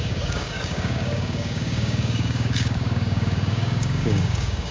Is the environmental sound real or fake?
fake